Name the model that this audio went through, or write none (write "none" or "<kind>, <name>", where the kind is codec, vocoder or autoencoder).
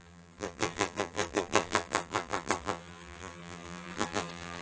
vocoder, BigVGAN v2